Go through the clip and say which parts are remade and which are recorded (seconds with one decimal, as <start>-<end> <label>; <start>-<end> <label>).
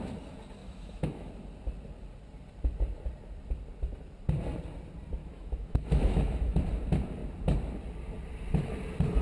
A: 0.0-0.6 recorded; 0.6-1.3 remade; 1.3-5.2 recorded; 5.2-6.6 remade; 6.6-9.2 recorded